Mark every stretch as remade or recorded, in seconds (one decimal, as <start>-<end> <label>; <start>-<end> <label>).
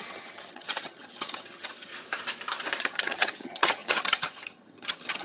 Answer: 0.0-1.9 remade; 1.9-2.8 recorded; 2.8-5.2 remade